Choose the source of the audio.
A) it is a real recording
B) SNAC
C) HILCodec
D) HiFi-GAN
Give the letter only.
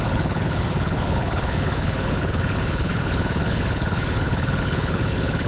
C